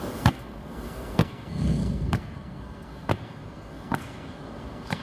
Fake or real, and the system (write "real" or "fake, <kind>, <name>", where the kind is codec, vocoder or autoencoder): fake, codec, SNAC